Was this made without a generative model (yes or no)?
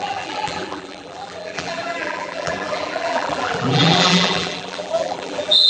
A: no